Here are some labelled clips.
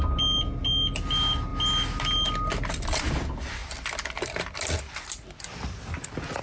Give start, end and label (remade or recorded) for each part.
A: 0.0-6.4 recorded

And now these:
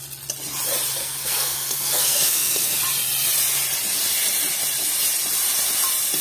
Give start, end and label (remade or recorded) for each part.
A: 0.0-1.0 recorded; 1.0-2.8 remade; 2.8-6.2 recorded

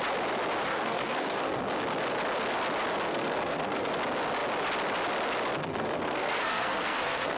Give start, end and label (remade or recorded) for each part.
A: 0.0-0.7 recorded; 0.7-1.6 remade; 1.6-3.1 recorded; 3.1-3.9 remade; 3.9-5.6 recorded; 5.6-7.4 remade